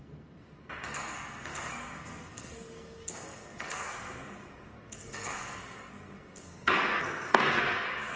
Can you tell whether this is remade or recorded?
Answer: remade